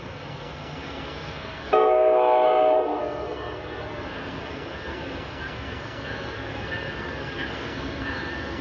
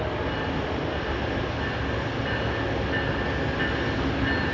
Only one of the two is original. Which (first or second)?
second